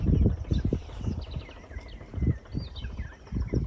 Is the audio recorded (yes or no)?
yes